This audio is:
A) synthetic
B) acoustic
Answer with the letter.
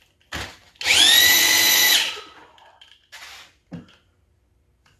B